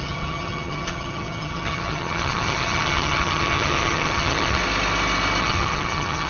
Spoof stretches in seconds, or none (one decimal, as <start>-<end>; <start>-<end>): 0.0-4.6; 5.4-6.3